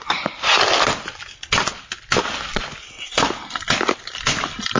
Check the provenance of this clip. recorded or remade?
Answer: recorded